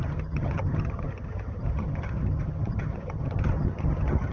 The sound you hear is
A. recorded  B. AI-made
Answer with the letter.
B